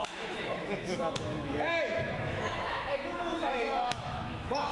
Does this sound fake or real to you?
fake